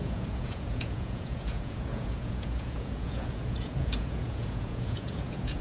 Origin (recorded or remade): remade